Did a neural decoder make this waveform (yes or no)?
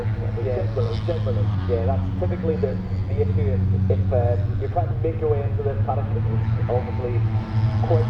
no